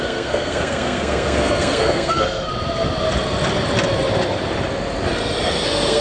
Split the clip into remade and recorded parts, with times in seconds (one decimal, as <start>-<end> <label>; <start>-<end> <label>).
0.0-2.5 remade; 2.5-5.4 recorded; 5.4-6.0 remade